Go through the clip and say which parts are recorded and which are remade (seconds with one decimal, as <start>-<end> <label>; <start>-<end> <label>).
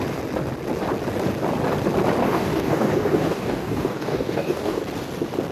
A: 0.0-2.2 recorded; 2.2-4.8 remade; 4.8-5.5 recorded